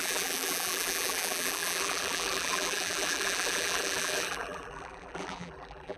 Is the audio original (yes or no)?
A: no